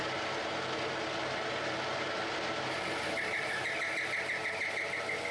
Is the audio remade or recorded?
recorded